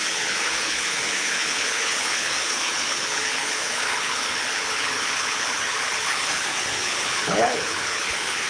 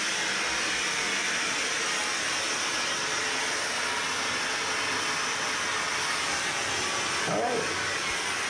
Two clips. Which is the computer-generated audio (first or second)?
first